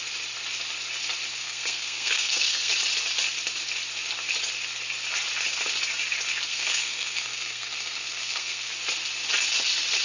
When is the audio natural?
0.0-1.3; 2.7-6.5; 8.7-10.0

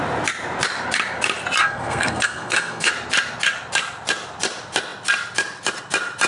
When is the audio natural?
0.0-1.6; 2.9-6.3